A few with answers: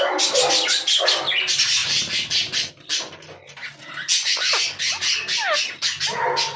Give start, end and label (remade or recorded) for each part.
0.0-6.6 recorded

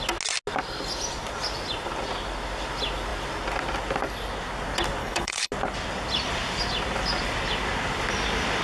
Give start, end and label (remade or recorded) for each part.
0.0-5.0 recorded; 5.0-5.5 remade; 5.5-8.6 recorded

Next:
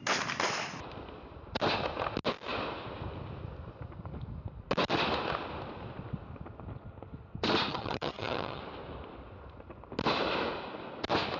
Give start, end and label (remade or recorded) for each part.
0.0-7.7 recorded; 7.7-8.6 remade; 8.6-11.4 recorded